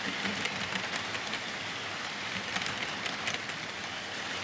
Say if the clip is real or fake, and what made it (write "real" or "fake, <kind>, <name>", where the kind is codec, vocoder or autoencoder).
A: real